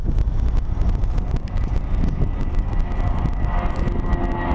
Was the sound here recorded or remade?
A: recorded